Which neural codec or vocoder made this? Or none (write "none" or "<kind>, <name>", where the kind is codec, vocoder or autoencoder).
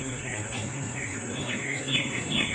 codec, SNAC